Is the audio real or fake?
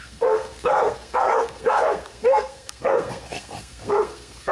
fake